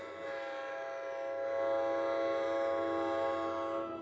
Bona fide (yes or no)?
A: yes